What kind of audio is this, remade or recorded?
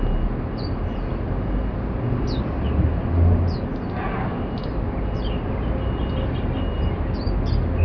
recorded